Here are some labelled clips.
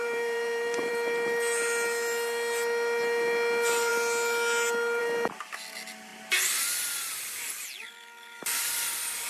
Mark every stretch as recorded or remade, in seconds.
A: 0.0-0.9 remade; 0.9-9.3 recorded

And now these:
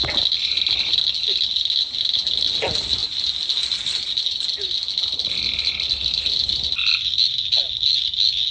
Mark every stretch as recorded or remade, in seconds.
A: 0.0-0.4 recorded; 0.4-1.0 remade; 1.0-8.5 recorded